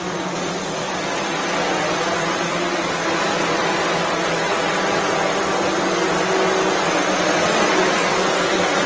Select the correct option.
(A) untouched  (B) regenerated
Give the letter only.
A